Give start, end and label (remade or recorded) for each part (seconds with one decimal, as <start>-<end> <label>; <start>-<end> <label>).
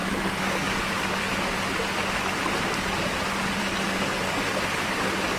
0.0-1.1 remade; 1.1-3.6 recorded; 3.6-4.4 remade; 4.4-5.4 recorded